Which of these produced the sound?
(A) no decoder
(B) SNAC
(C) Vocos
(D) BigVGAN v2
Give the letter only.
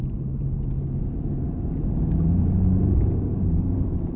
D